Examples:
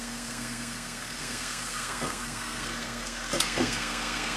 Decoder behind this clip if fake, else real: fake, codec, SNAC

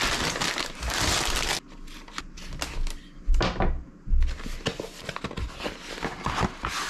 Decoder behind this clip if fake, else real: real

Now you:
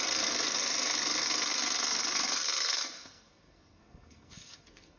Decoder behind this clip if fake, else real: fake, codec, SNAC